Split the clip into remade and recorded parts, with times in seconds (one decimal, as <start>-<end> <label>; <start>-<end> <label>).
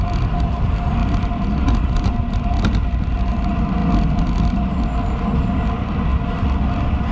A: 0.0-1.0 recorded; 1.0-1.5 remade; 1.5-6.1 recorded; 6.1-6.6 remade; 6.6-7.1 recorded